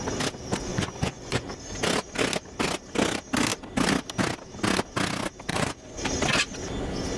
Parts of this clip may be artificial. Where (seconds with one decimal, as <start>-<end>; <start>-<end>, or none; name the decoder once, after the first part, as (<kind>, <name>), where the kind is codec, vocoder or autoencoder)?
0.7-1.5 (vocoder, Vocos); 5.5-6.0